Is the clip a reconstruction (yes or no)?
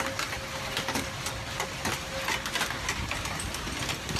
no